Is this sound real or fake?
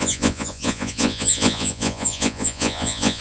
fake